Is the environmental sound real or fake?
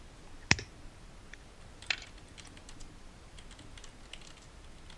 real